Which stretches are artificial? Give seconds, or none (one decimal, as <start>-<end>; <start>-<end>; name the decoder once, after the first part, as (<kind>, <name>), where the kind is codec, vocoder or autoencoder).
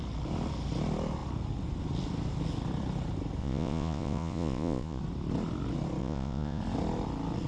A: 3.4-5.0 (vocoder, Vocos); 6.0-6.6